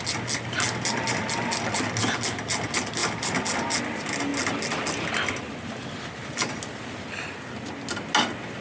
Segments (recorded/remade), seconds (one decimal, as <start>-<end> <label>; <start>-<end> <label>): 0.0-8.6 recorded